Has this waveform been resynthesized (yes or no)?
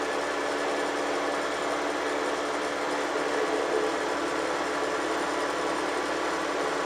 no